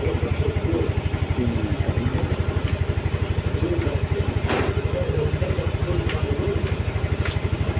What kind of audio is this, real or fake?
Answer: real